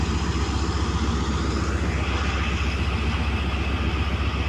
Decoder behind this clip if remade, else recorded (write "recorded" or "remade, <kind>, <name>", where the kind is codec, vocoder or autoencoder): recorded